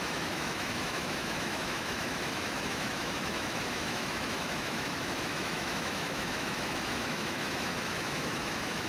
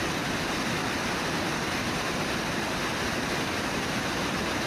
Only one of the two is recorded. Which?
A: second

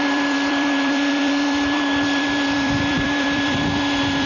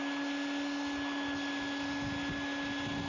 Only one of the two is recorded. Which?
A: second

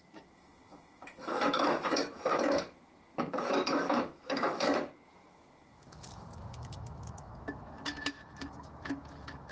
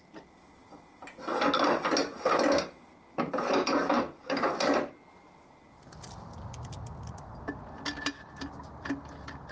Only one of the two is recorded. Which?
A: second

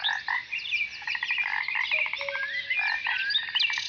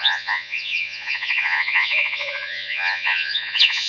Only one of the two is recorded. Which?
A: first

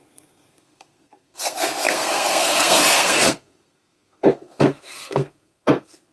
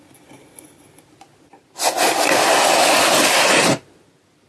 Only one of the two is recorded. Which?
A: second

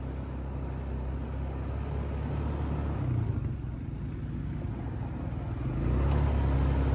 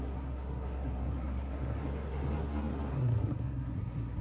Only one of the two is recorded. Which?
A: first